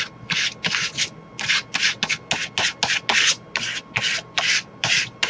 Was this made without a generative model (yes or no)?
yes